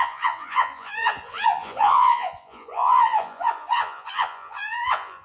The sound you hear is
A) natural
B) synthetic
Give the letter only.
B